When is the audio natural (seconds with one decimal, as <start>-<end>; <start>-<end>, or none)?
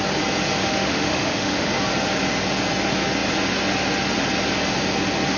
0.0-0.6; 1.7-5.4